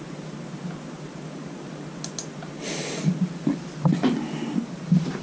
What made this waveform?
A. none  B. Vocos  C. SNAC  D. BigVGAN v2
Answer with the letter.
A